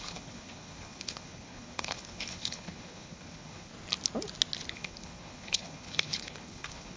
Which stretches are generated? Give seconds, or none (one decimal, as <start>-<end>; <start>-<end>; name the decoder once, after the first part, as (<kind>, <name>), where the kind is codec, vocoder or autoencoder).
0.0-3.7 (codec, HILCodec); 4.7-7.0